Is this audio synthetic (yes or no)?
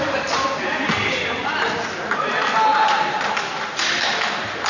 no